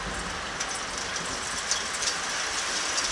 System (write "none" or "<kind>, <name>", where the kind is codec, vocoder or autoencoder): none